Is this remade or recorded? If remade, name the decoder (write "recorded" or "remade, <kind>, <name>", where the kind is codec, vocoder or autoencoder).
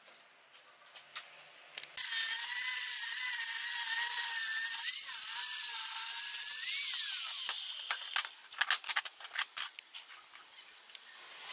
recorded